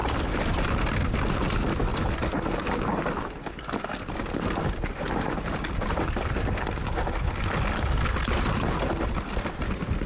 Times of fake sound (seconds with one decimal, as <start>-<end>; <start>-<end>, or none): none